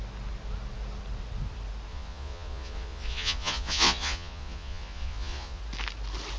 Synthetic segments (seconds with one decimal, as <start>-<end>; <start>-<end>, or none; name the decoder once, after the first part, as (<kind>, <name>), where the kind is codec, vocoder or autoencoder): 1.9-5.6 (vocoder, Vocos)